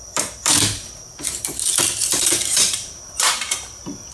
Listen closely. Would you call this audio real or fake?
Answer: fake